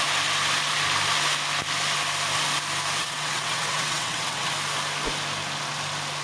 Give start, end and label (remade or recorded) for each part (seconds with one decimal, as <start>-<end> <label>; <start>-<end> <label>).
0.0-3.0 recorded; 3.0-4.5 remade; 4.5-6.2 recorded